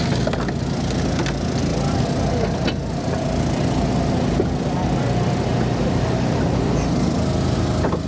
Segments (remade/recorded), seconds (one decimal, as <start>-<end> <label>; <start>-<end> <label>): 0.0-8.1 recorded